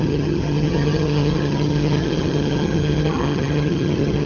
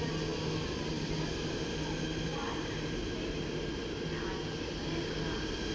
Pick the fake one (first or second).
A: first